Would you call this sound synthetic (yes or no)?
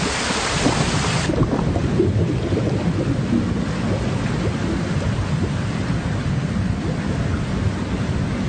yes